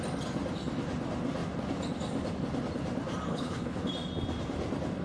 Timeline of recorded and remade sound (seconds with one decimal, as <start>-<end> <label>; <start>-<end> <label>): 0.0-3.3 recorded; 3.3-3.8 remade; 3.8-5.0 recorded